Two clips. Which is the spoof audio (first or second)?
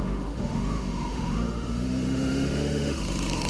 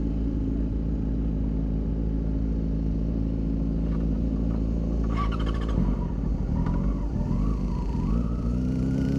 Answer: first